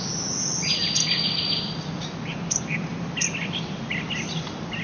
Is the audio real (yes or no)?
yes